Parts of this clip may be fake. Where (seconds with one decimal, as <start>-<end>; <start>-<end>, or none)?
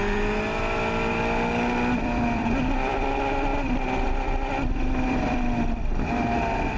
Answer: 1.9-3.5; 4.7-6.8